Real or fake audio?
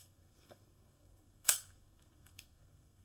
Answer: fake